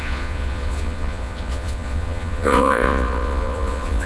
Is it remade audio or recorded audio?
remade